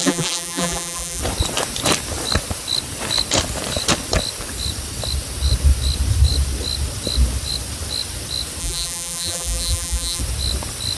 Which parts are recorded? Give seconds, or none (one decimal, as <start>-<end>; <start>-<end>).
1.2-8.6; 10.2-11.0